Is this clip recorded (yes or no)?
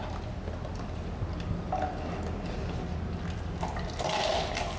yes